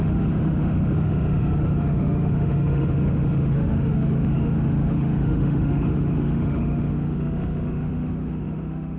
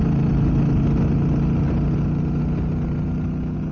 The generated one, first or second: first